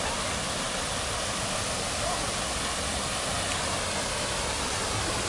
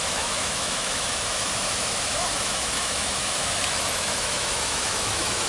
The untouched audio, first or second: first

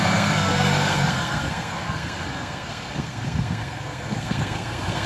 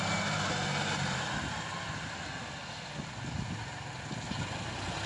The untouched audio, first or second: second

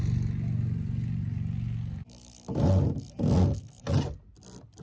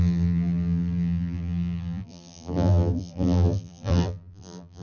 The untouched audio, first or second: first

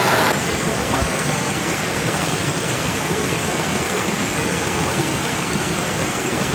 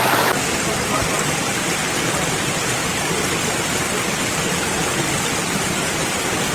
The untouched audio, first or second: second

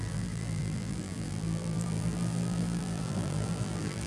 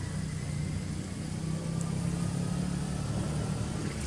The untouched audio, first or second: second